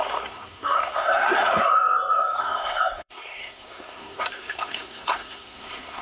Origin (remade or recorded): remade